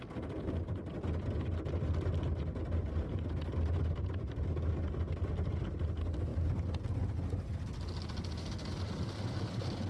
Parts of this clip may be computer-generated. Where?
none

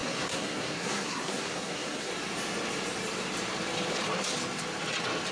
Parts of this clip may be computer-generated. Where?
0.0-2.1 (codec, SNAC)

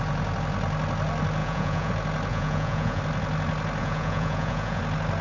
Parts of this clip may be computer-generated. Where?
1.4-1.9 (vocoder, Vocos); 2.3-3.0; 3.8-4.8

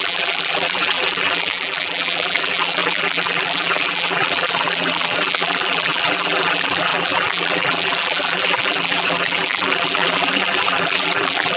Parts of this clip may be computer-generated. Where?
0.0-11.6 (vocoder, BigVGAN v2)